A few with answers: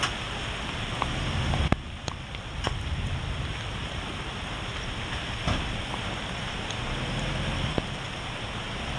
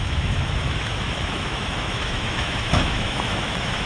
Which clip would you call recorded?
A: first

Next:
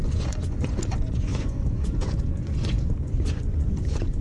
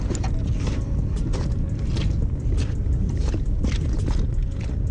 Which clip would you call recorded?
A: second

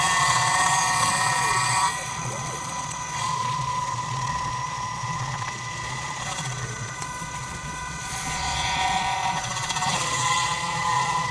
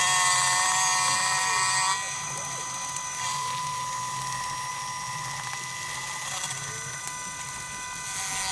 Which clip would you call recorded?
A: second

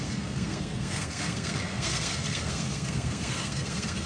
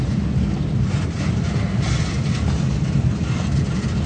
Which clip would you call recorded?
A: second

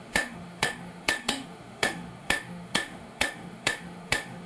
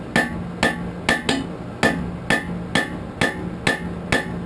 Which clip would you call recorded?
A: second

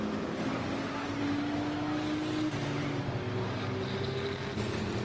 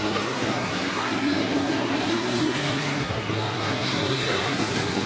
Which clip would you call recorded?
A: first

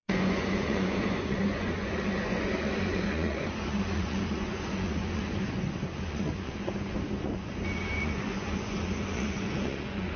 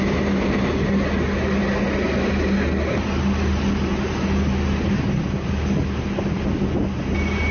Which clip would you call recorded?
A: second